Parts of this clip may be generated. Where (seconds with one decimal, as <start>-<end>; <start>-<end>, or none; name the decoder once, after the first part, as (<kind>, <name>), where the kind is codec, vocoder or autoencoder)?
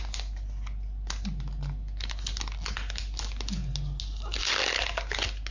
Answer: none